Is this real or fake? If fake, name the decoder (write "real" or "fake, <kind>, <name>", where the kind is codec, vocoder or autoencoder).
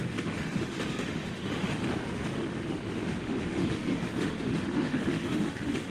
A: fake, autoencoder, DAC-VAE